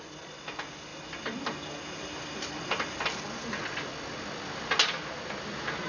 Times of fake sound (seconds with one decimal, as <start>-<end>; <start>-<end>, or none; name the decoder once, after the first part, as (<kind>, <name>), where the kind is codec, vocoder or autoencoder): none